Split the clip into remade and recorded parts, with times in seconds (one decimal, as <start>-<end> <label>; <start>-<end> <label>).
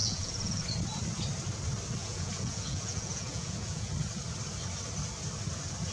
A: 0.0-0.6 remade; 0.6-2.0 recorded; 2.0-3.9 remade; 3.9-5.9 recorded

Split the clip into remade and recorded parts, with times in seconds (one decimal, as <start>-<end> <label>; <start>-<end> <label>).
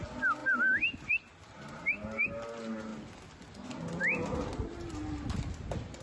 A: 0.0-6.0 recorded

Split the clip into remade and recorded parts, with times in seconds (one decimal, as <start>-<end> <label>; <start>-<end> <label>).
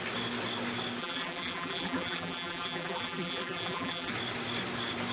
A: 0.0-1.0 recorded; 1.0-4.1 remade; 4.1-5.1 recorded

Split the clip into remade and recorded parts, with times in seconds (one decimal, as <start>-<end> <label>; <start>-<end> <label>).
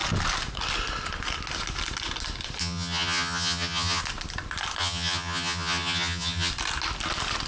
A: 0.0-2.6 recorded; 2.6-4.0 remade; 4.0-4.8 recorded; 4.8-6.5 remade; 6.5-7.5 recorded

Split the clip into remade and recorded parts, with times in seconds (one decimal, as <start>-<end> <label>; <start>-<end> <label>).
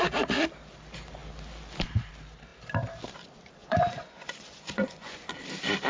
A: 0.0-3.6 recorded; 3.6-5.3 remade; 5.3-5.9 recorded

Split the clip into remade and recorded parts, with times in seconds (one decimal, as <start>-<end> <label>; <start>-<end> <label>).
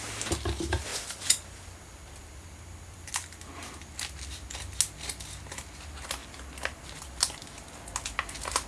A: 0.0-0.9 recorded; 0.9-3.1 remade; 3.1-6.2 recorded; 6.2-6.9 remade; 6.9-8.7 recorded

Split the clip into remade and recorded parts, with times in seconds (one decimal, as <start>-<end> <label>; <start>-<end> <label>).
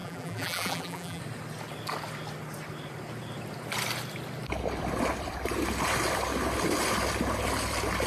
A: 0.0-1.2 remade; 1.2-8.1 recorded